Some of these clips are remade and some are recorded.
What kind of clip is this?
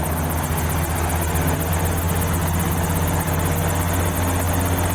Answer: recorded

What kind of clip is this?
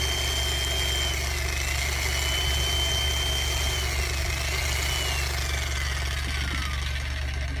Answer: recorded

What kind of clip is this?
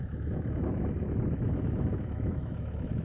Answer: remade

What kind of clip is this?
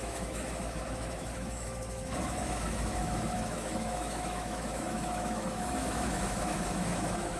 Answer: remade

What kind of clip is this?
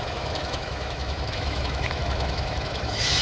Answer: remade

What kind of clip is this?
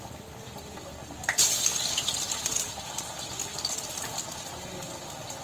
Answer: recorded